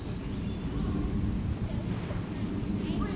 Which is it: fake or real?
real